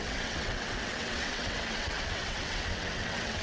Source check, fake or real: fake